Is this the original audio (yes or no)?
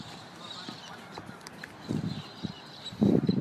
no